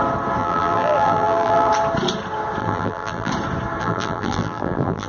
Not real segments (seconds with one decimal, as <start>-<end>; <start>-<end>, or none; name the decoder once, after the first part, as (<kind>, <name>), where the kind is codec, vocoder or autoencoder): 0.4-1.7 (vocoder, BigVGAN v2); 2.6-3.3; 3.8-5.1